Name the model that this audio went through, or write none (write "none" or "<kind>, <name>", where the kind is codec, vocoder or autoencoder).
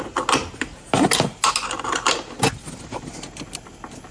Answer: none